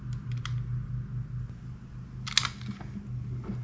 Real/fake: real